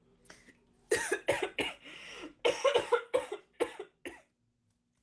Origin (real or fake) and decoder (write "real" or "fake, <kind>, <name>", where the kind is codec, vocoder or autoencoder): real